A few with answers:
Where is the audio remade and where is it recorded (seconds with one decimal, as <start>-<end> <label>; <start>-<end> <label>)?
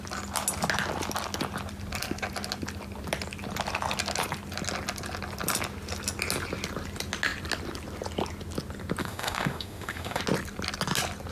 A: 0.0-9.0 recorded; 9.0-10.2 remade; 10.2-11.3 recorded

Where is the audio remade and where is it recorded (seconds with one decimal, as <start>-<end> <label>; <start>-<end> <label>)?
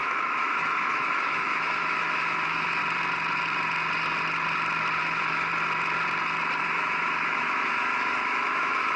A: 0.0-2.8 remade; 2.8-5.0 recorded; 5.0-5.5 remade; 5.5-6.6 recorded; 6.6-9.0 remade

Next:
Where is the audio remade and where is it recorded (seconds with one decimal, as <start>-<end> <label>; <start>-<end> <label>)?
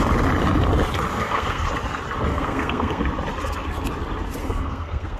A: 0.0-1.1 recorded; 1.1-1.7 remade; 1.7-2.3 recorded; 2.3-3.0 remade; 3.0-4.4 recorded; 4.4-5.2 remade